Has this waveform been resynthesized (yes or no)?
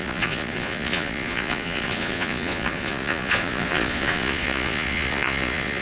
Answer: yes